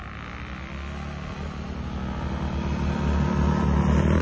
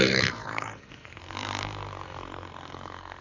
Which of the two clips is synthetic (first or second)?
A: second